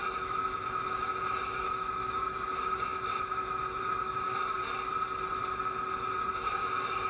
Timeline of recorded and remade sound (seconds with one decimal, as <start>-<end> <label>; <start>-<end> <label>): 0.0-4.6 remade; 4.6-6.3 recorded; 6.3-7.1 remade